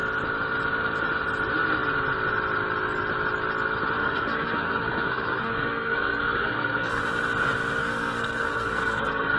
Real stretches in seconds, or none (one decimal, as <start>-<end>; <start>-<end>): 0.0-4.0; 7.0-7.8